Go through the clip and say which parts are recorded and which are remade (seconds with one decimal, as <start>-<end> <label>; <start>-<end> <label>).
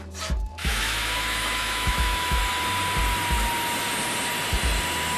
0.0-0.5 recorded; 0.5-2.4 remade; 2.4-5.2 recorded